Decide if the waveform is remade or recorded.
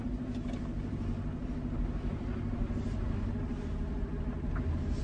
recorded